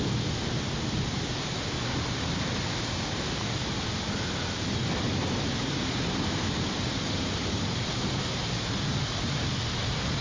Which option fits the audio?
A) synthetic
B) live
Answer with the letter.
B